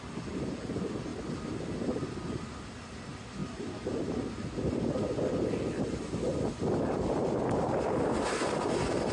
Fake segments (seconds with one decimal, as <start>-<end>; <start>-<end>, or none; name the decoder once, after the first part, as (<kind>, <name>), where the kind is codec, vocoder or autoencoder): none